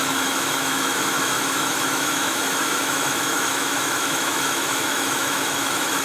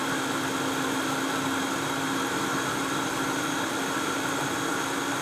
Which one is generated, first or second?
first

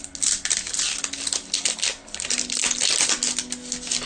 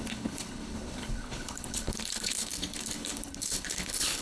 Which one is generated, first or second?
second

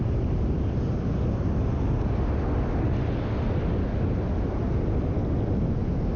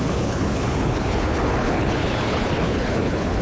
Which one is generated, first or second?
second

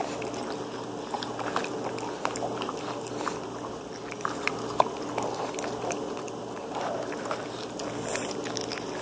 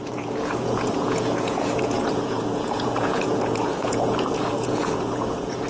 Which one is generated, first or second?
second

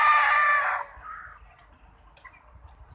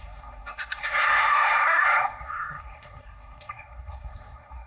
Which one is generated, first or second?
second